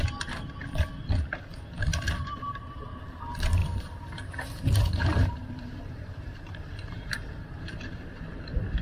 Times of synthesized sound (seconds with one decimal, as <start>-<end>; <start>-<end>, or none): 1.9-2.9; 3.6-8.2